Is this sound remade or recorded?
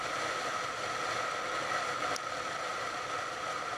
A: recorded